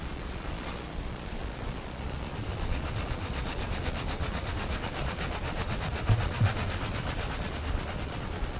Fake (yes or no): yes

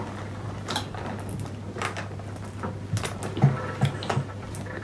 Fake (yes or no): no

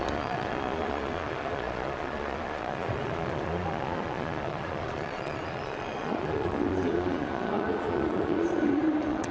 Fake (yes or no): yes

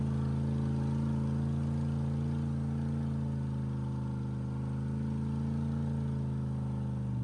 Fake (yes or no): no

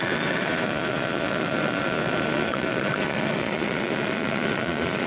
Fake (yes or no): yes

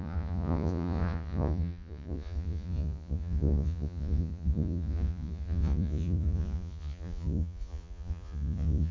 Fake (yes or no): yes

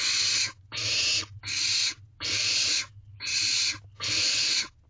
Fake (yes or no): no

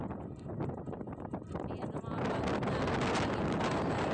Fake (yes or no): no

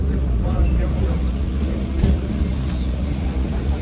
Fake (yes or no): yes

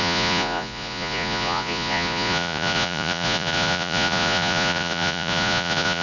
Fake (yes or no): yes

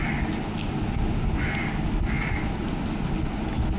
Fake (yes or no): no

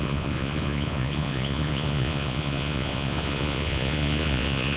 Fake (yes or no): yes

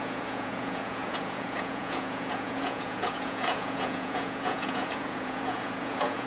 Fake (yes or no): yes